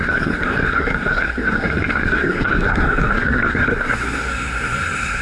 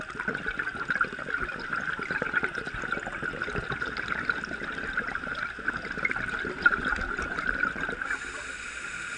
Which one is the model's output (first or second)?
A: first